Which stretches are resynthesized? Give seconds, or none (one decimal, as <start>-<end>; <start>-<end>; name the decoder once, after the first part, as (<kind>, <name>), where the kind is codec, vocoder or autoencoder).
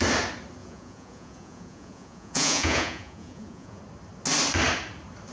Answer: 0.6-3.8 (vocoder, Vocos)